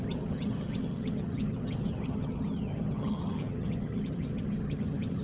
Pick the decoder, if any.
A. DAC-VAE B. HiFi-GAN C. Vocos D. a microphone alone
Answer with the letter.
B